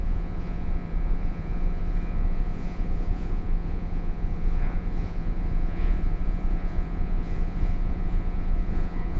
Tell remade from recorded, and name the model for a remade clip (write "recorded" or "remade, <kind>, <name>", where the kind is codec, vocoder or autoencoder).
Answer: remade, vocoder, Vocos